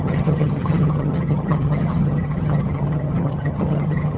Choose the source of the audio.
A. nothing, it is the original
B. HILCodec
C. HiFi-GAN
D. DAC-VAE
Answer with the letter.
C